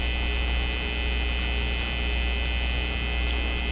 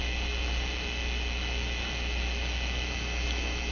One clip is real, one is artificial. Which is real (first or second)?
first